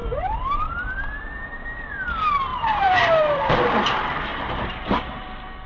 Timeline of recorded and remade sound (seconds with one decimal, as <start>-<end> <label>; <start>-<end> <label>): 0.0-1.1 remade; 1.1-2.5 recorded; 2.5-3.5 remade; 3.5-4.3 recorded; 4.3-5.2 remade; 5.2-5.7 recorded

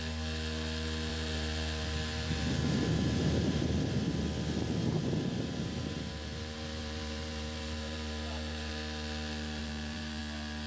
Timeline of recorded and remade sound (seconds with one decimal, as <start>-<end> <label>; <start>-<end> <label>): 0.0-1.1 recorded; 1.1-3.9 remade; 3.9-4.8 recorded; 4.8-8.7 remade; 8.7-9.6 recorded; 9.6-10.2 remade; 10.2-10.7 recorded

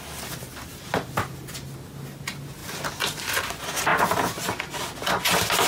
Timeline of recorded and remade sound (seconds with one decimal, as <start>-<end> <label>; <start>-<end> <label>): 0.0-5.7 recorded

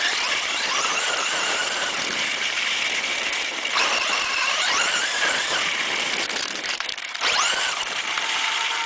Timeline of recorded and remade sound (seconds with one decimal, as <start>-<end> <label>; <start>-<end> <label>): 0.0-8.9 remade

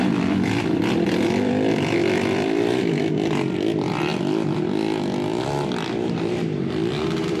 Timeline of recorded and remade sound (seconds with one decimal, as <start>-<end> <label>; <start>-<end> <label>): 0.0-4.1 remade; 4.1-6.1 recorded; 6.1-7.4 remade

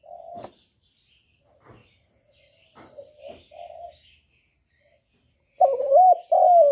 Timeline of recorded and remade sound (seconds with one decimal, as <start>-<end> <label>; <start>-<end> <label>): 0.0-6.7 recorded